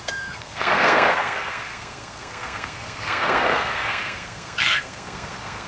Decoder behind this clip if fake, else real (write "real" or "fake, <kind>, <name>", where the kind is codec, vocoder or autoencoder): fake, codec, SNAC